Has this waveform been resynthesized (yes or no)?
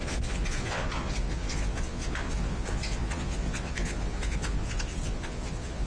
yes